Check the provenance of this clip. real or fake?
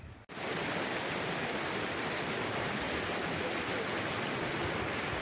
real